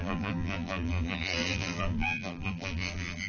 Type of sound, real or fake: fake